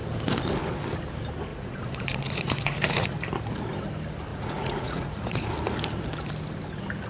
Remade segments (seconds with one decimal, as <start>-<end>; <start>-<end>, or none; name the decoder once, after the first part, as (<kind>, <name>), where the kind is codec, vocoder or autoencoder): 1.5-3.3 (vocoder, Vocos); 4.3-5.5